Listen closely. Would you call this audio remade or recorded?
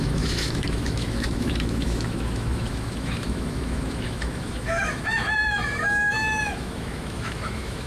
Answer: remade